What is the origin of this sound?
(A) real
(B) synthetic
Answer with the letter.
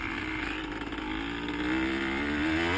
A